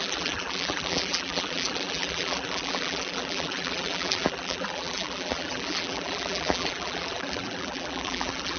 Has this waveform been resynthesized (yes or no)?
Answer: yes